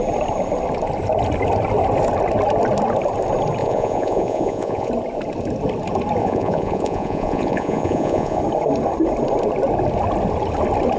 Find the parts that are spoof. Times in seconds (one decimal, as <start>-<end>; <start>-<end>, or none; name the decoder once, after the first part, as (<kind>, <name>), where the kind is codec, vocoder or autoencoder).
3.6-4.9 (vocoder, Vocos); 6.2-8.4